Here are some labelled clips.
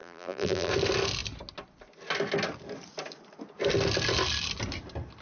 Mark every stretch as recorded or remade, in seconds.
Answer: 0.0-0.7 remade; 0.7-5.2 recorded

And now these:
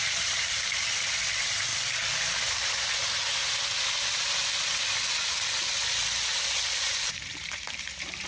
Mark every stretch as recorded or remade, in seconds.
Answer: 0.0-1.7 remade; 1.7-2.5 recorded; 2.5-3.4 remade; 3.4-7.1 recorded; 7.1-8.3 remade

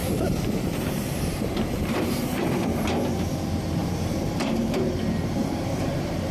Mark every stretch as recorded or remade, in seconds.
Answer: 0.0-2.7 remade; 2.7-3.8 recorded; 3.8-4.9 remade; 4.9-5.4 recorded; 5.4-6.3 remade